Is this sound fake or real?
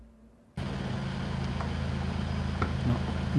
real